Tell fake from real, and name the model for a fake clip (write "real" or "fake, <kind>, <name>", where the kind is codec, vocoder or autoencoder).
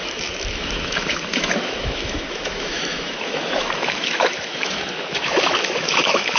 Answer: fake, autoencoder, DAC-VAE